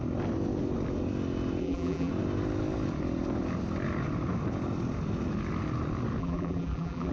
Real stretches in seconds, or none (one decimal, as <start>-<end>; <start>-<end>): 0.0-1.6; 2.1-6.2